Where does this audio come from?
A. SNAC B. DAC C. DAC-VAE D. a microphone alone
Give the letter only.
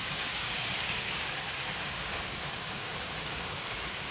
B